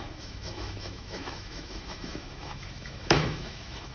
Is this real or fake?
fake